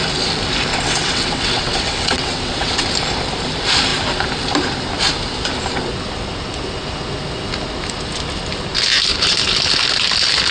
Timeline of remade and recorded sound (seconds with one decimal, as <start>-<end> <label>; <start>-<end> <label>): 0.0-0.7 recorded; 0.7-2.9 remade; 2.9-10.5 recorded